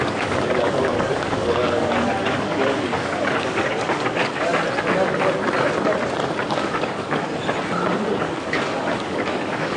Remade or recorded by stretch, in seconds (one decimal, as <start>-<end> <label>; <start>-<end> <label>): 0.0-4.5 remade; 4.5-6.6 recorded; 6.6-7.4 remade; 7.4-8.2 recorded; 8.2-9.8 remade